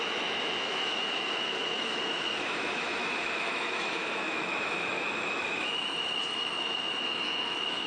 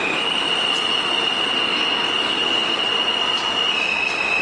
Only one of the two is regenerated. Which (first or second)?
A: first